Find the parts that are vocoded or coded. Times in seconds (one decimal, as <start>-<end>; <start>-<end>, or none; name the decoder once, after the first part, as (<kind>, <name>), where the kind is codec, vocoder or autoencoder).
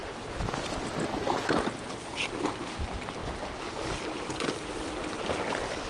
none